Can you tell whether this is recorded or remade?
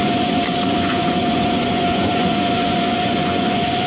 remade